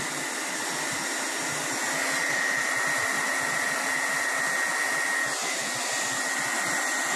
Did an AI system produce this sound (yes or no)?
no